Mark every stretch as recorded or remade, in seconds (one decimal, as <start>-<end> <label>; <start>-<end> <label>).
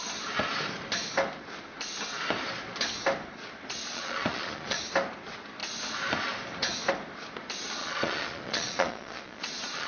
0.0-3.9 recorded; 3.9-4.8 remade; 4.8-7.8 recorded; 7.8-9.9 remade